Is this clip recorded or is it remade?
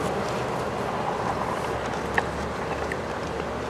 recorded